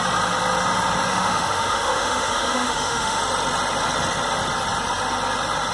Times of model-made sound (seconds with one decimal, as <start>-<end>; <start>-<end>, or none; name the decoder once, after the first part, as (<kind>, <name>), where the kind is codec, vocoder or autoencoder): 1.1-3.2 (autoencoder, DAC-VAE)